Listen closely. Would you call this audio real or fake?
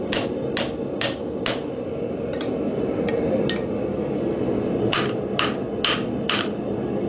real